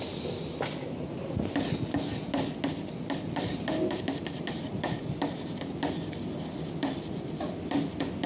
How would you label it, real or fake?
real